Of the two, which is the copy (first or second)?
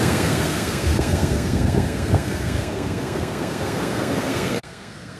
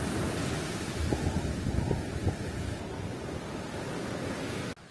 first